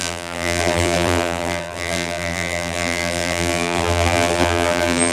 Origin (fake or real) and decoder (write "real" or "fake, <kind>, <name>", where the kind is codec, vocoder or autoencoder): fake, vocoder, BigVGAN v2